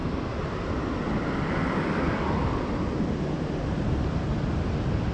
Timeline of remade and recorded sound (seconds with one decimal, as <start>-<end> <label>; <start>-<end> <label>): 0.0-5.1 recorded